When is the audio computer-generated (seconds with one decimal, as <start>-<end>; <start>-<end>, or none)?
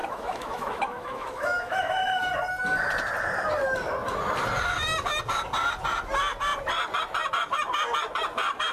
0.0-2.3